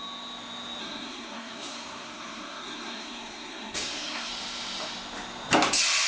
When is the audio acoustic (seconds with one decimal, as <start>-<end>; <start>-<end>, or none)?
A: 0.0-0.8; 4.3-6.1